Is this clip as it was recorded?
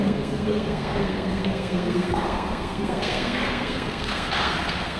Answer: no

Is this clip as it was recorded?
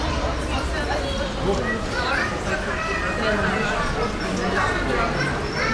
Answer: yes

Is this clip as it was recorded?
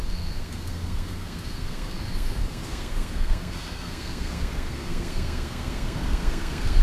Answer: no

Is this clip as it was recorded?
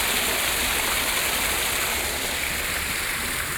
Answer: yes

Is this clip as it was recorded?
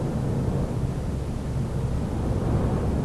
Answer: yes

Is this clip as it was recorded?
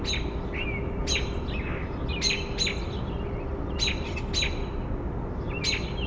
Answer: yes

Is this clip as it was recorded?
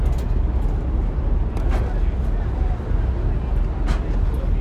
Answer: yes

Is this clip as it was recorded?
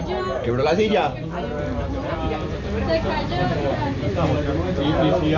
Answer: yes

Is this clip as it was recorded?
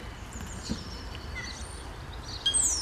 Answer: yes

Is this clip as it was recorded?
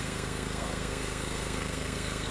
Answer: no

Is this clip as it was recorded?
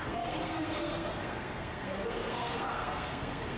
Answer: no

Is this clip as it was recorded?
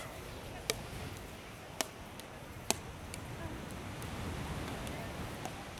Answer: yes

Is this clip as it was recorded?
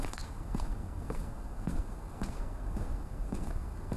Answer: no